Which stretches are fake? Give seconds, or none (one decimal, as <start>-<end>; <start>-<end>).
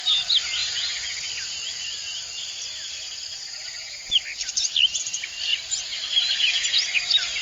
5.5-6.5